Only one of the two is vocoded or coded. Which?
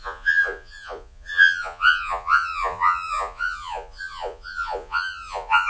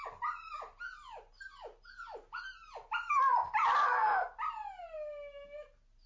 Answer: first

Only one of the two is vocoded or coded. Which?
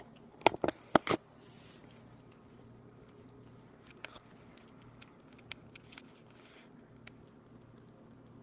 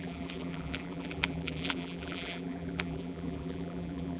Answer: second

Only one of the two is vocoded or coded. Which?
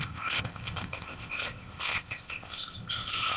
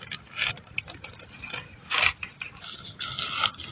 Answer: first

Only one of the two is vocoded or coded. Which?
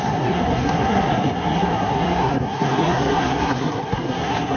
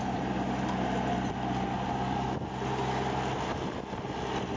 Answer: first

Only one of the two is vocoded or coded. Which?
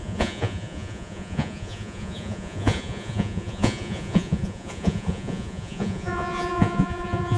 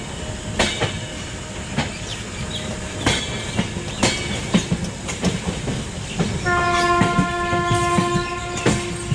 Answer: first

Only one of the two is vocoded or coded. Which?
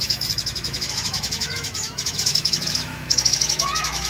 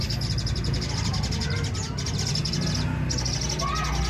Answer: first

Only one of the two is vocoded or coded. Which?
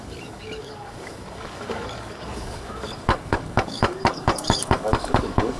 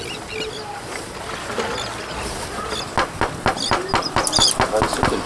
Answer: first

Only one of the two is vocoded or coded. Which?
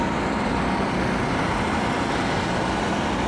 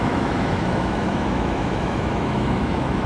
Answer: second